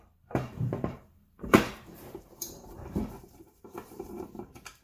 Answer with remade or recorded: remade